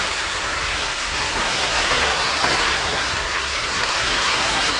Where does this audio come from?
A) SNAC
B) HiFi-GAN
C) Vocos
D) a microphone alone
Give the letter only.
A